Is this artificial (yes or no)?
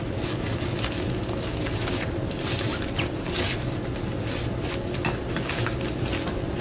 no